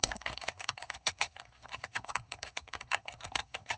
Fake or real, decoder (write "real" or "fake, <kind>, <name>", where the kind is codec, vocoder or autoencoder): fake, codec, SNAC